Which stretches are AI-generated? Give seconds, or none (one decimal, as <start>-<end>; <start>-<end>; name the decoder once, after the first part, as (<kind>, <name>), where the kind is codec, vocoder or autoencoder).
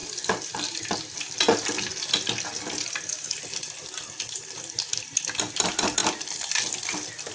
none